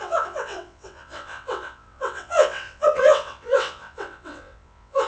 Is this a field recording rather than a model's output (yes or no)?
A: no